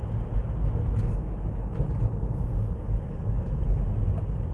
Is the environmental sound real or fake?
real